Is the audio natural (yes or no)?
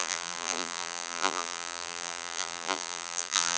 no